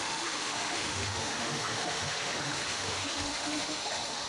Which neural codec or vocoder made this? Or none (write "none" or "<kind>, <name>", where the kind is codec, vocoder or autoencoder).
autoencoder, DAC-VAE